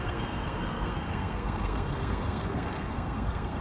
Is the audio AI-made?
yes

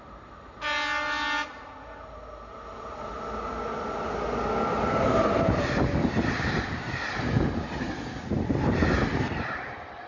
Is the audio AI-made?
no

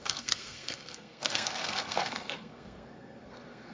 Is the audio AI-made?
yes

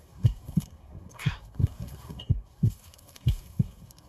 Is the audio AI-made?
yes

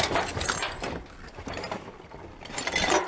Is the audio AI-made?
no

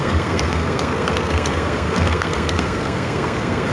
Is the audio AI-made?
yes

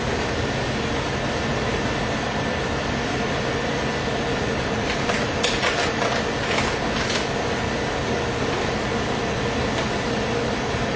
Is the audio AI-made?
no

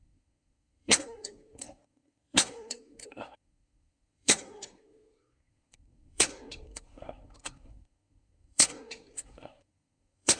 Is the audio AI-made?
yes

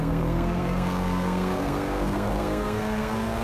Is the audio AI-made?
yes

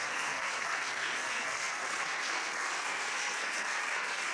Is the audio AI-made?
yes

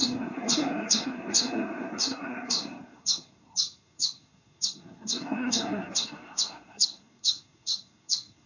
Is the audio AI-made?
yes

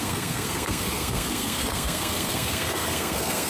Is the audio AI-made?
yes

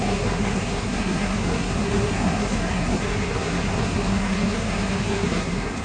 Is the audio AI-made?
yes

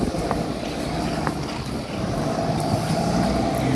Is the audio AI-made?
no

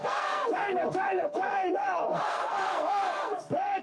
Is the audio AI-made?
yes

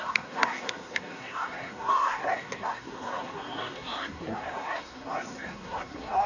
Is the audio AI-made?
yes